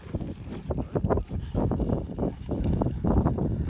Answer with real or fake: real